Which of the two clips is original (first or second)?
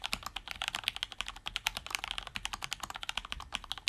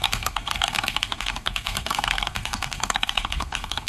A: first